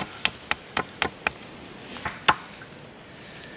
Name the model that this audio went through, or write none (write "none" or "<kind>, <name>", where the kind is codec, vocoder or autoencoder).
none